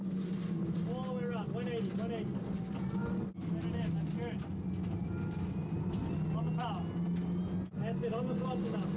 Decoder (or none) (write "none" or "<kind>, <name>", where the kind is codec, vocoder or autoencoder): none